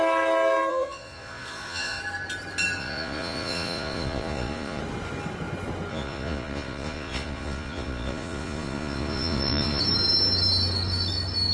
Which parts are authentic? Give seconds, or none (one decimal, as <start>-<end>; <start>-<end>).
0.0-0.7; 2.0-2.8; 4.8-5.9; 9.8-11.5